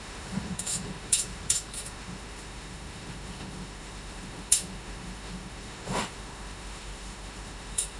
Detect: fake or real fake